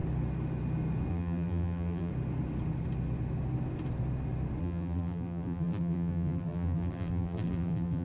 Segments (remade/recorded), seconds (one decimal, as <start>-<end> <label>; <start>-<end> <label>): 0.0-1.1 recorded; 1.1-2.1 remade; 2.1-4.6 recorded; 4.6-8.0 remade